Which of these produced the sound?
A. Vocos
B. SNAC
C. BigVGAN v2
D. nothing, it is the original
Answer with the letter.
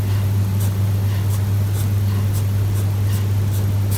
D